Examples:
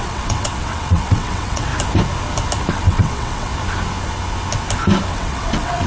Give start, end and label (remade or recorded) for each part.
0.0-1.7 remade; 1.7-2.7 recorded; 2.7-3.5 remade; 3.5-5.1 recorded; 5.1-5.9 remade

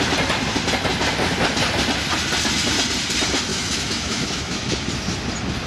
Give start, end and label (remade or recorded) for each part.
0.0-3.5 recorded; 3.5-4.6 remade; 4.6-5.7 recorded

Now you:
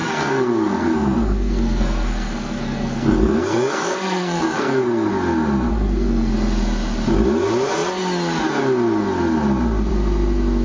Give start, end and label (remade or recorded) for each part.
0.0-5.1 remade; 5.1-5.7 recorded; 5.7-6.3 remade; 6.3-10.6 recorded

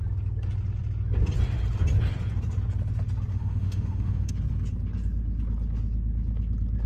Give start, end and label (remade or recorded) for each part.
0.0-3.3 recorded; 3.3-4.3 remade; 4.3-6.9 recorded

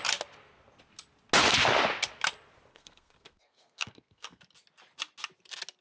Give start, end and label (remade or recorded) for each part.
0.0-2.7 recorded; 2.7-4.4 remade; 4.4-5.8 recorded